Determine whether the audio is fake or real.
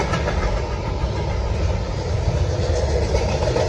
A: real